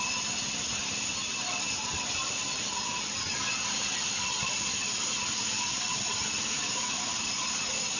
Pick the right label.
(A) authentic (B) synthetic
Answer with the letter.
A